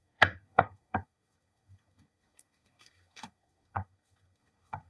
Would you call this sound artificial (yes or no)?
yes